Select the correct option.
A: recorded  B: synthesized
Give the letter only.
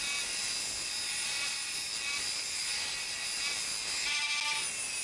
A